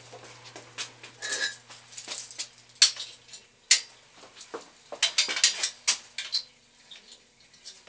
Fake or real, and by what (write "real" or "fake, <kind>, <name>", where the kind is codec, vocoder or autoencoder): real